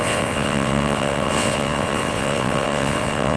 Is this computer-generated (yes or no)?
yes